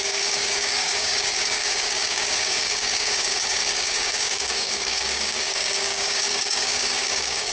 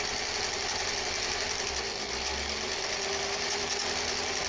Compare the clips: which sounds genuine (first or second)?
second